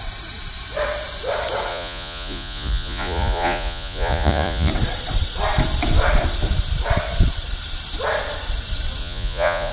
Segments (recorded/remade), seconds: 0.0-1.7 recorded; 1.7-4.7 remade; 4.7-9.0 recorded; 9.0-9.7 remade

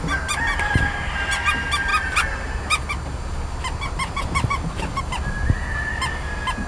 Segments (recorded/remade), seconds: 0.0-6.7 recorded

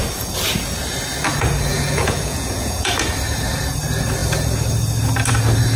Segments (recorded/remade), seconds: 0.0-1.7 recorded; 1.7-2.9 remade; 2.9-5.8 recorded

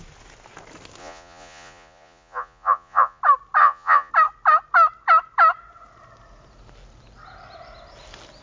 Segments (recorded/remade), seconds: 0.0-1.0 recorded; 1.0-3.2 remade; 3.2-3.6 recorded; 3.6-4.1 remade; 4.1-8.4 recorded

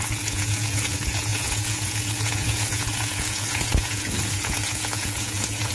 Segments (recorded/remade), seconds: 0.0-5.7 remade